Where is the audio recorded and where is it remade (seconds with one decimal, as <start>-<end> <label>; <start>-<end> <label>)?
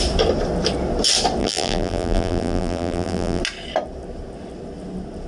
0.0-1.4 recorded; 1.4-3.4 remade; 3.4-5.3 recorded